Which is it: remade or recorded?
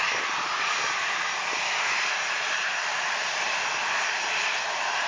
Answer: recorded